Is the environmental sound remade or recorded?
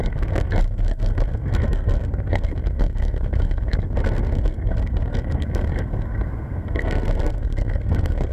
remade